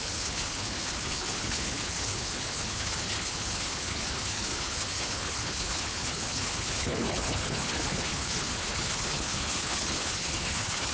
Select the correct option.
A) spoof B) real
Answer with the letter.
A